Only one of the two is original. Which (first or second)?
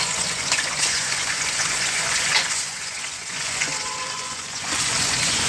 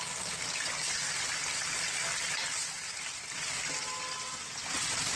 second